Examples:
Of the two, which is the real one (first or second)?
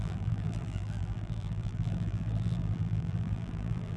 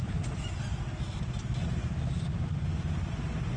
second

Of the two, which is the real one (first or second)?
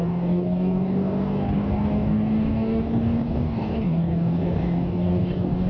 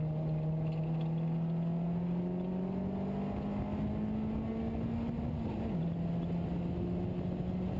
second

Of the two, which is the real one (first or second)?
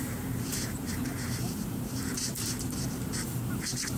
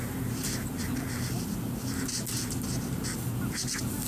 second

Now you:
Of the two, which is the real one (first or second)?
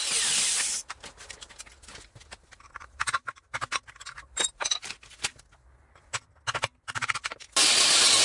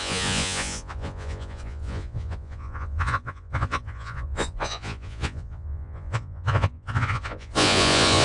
first